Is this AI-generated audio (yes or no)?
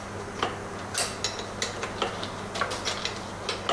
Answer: no